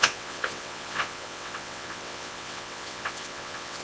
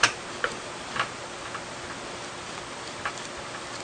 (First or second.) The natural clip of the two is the second